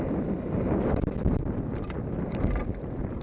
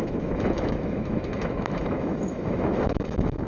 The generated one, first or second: second